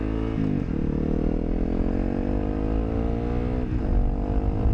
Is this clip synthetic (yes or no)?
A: no